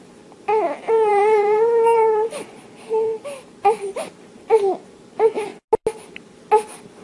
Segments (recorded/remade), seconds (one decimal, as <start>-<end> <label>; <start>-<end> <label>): 0.0-5.5 remade; 5.5-6.2 recorded; 6.2-7.0 remade